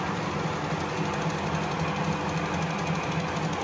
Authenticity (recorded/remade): recorded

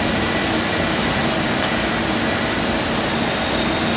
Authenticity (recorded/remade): recorded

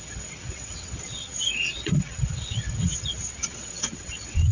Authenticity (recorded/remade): remade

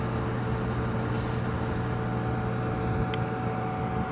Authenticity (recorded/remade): recorded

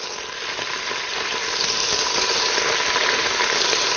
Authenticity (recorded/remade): recorded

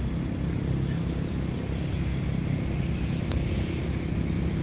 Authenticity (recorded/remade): recorded